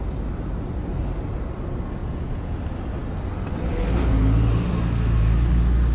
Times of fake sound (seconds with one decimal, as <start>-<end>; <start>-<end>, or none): 2.0-2.6